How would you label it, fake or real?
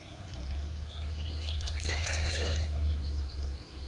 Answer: fake